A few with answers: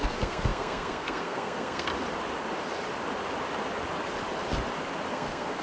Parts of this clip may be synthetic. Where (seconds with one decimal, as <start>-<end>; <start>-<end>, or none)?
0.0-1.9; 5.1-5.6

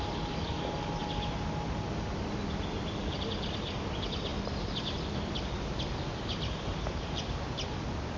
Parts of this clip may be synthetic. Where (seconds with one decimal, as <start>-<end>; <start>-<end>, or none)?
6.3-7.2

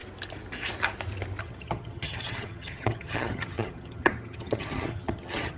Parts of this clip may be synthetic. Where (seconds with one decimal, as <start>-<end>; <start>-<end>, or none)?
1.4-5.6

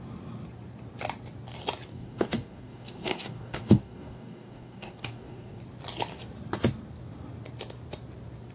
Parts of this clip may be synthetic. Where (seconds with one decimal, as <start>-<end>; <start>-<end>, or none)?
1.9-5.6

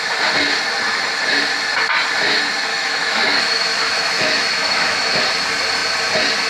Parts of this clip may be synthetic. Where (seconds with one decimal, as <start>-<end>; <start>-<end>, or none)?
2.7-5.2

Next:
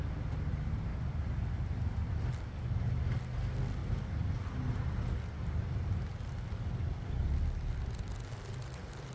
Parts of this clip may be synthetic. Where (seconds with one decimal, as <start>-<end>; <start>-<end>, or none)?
none